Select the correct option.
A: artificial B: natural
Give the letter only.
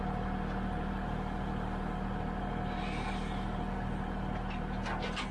B